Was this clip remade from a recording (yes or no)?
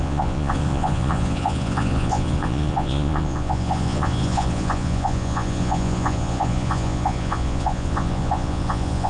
yes